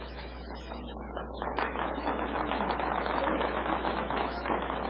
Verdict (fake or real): fake